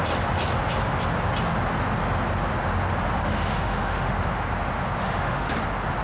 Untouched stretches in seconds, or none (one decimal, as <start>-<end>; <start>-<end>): 0.0-3.2; 4.1-5.0; 5.5-6.0